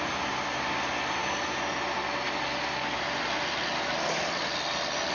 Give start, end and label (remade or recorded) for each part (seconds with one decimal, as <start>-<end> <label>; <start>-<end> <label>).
0.0-5.1 recorded